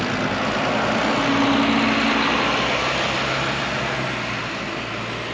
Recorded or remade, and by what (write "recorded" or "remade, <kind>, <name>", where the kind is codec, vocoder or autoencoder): recorded